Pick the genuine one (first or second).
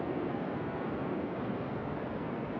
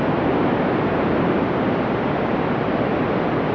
second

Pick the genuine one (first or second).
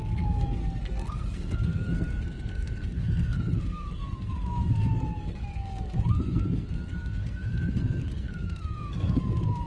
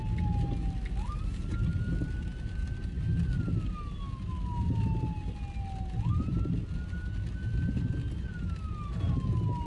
second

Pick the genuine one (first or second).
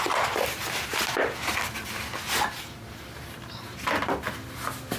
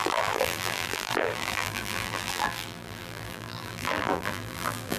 first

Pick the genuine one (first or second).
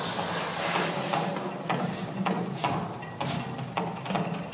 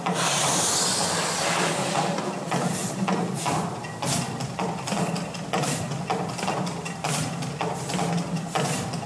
first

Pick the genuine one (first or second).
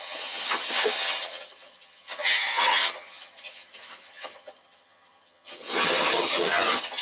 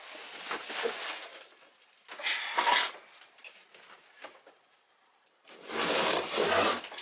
second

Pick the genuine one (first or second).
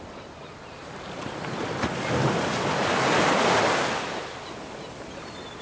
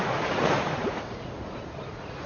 first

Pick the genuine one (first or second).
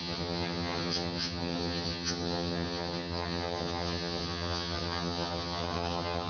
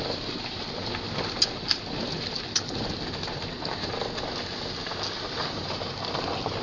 second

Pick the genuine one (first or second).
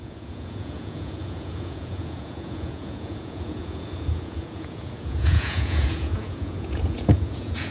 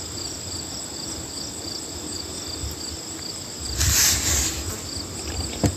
second